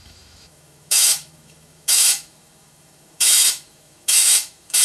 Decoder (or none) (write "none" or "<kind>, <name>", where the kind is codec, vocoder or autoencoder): autoencoder, DAC-VAE